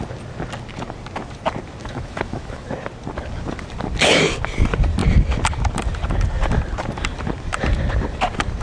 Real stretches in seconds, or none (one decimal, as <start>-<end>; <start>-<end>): 0.0-1.8; 2.7-8.6